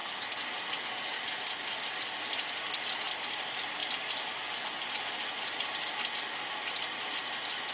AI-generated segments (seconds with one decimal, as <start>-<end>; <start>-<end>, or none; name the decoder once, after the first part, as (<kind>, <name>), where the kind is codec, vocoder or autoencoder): none